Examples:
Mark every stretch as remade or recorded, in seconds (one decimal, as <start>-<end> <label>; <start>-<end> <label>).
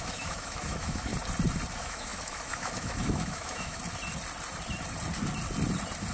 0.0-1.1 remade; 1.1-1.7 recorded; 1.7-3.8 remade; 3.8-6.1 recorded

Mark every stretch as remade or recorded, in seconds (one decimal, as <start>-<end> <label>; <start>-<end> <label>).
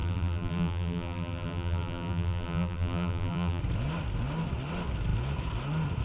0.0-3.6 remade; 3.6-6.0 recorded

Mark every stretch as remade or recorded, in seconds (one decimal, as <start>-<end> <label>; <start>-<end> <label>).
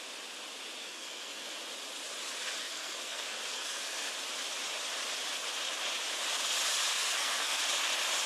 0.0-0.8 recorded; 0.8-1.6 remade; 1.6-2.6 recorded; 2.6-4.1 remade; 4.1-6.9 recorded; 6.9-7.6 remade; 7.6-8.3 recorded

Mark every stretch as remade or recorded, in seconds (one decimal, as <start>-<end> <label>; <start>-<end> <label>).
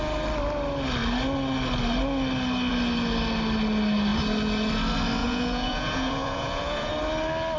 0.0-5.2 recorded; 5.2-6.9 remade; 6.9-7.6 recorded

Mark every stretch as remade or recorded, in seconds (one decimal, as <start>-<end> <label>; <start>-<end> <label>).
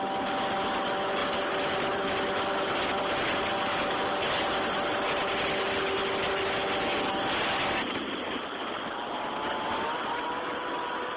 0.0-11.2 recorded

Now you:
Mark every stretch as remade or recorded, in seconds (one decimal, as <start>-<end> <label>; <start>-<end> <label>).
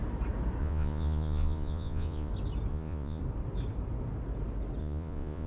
0.0-0.6 recorded; 0.6-2.3 remade; 2.3-2.7 recorded; 2.7-3.2 remade; 3.2-4.8 recorded; 4.8-5.5 remade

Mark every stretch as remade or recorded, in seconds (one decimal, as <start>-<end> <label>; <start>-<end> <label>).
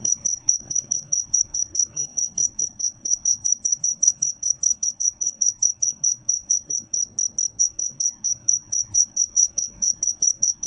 0.0-7.0 remade; 7.0-7.6 recorded; 7.6-10.7 remade